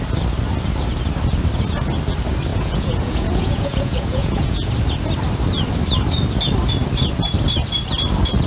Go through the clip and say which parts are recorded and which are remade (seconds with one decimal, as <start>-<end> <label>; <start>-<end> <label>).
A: 0.0-2.5 recorded; 2.5-4.7 remade; 4.7-8.5 recorded